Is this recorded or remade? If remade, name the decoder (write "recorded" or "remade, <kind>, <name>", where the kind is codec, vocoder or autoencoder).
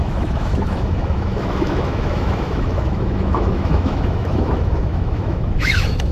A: remade, autoencoder, DAC-VAE